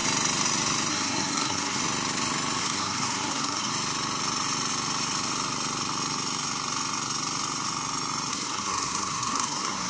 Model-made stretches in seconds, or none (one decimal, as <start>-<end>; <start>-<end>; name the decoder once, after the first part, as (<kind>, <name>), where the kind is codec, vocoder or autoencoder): 0.9-1.8 (codec, SNAC); 2.6-3.7; 8.3-9.9